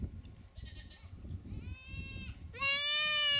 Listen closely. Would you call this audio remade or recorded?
recorded